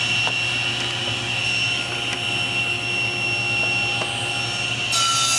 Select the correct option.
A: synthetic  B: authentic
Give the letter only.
B